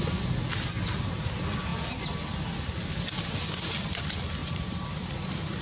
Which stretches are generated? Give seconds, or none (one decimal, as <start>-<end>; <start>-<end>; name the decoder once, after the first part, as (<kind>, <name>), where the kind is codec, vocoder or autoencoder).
4.4-5.6 (vocoder, BigVGAN v2)